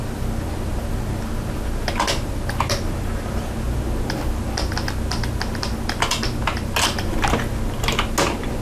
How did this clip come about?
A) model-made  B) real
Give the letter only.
B